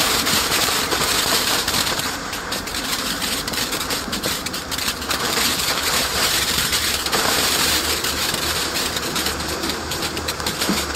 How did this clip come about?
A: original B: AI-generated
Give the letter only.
B